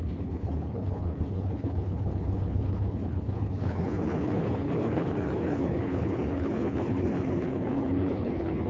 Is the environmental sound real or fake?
fake